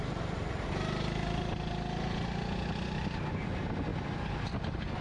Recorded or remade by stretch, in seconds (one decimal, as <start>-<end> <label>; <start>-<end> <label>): 0.0-5.0 recorded